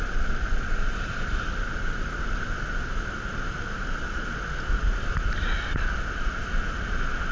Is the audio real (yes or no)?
yes